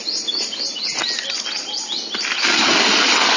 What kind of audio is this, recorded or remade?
recorded